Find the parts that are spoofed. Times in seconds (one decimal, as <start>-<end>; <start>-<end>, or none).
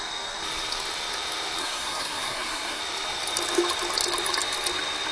1.6-2.8